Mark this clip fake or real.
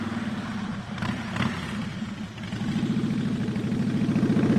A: real